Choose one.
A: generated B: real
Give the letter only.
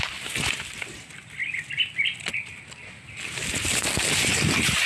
B